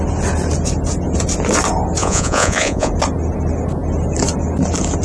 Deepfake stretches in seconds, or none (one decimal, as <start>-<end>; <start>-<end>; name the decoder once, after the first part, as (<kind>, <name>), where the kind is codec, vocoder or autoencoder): 2.0-2.9 (vocoder, Vocos)